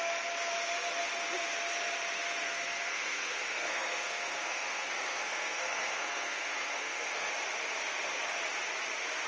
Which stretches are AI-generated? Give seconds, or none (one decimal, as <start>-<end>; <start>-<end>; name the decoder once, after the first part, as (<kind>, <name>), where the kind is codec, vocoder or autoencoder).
2.4-7.3 (codec, SNAC)